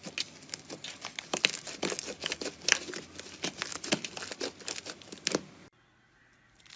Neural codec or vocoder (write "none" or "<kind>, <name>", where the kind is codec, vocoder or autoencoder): none